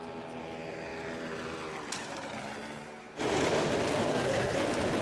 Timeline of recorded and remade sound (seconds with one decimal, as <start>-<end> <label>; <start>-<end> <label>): 0.0-4.1 recorded; 4.1-4.6 remade; 4.6-5.0 recorded